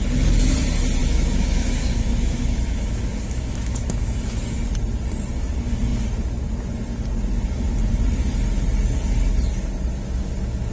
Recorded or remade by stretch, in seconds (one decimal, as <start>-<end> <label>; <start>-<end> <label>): 0.0-1.0 recorded; 1.0-4.4 remade; 4.4-10.7 recorded